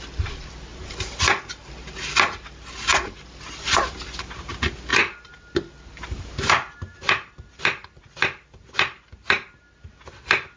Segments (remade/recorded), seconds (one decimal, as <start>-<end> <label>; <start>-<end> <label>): 0.0-0.7 recorded; 0.7-1.4 remade; 1.4-2.9 recorded; 2.9-4.3 remade; 4.3-4.9 recorded; 4.9-9.9 remade; 9.9-10.6 recorded